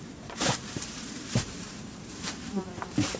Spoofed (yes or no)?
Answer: yes